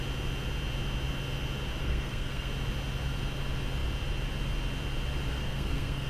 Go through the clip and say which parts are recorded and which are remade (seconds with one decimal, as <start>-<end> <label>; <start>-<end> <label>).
0.0-1.8 recorded; 1.8-2.5 remade; 2.5-5.3 recorded; 5.3-6.1 remade